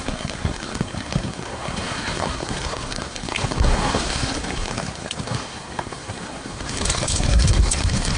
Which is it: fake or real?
fake